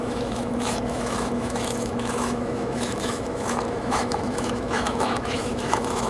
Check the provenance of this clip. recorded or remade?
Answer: remade